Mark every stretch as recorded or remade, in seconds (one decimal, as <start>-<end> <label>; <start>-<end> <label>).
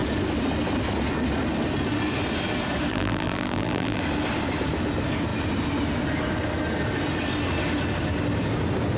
0.0-2.9 recorded; 2.9-4.0 remade; 4.0-9.0 recorded